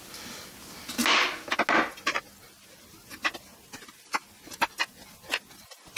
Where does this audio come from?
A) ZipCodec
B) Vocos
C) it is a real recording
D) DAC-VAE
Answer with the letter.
C